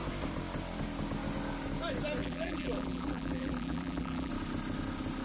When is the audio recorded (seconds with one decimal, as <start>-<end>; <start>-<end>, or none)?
0.0-2.2; 4.3-5.2